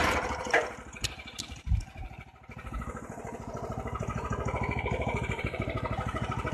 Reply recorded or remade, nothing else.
remade